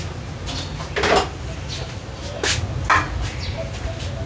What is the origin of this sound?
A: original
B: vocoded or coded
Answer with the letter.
A